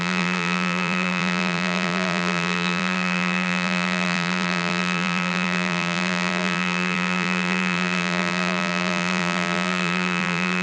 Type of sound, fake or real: fake